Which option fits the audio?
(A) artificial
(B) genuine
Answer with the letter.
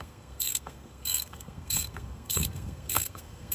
A